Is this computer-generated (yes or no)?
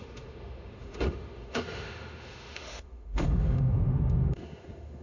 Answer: yes